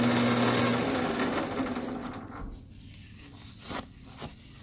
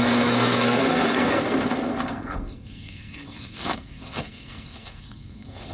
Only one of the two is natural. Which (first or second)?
first